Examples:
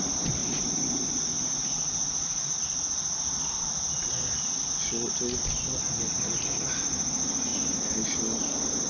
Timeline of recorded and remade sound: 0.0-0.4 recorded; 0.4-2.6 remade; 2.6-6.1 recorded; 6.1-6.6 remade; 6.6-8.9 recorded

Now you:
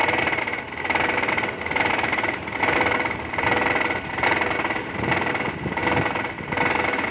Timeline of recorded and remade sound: 0.0-5.8 remade; 5.8-7.1 recorded

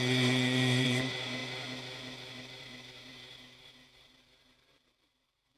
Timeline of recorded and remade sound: 0.0-1.4 remade; 1.4-2.3 recorded; 2.3-5.6 remade

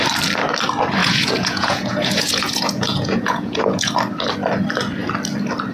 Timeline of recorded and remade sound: 0.0-1.0 recorded; 1.0-3.9 remade; 3.9-5.7 recorded

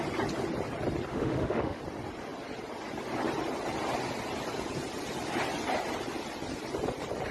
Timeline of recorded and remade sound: 0.0-1.1 recorded; 1.1-1.8 remade; 1.8-7.3 recorded